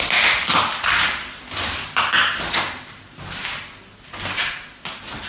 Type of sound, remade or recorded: recorded